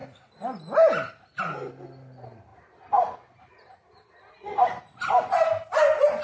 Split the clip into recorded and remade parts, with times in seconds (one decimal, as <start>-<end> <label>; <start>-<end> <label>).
0.0-6.2 recorded